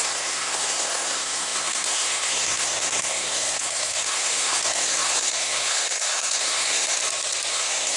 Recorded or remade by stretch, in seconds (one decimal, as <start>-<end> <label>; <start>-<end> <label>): 0.0-7.0 remade; 7.0-7.5 recorded; 7.5-8.0 remade